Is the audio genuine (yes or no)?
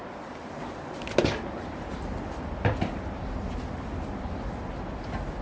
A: yes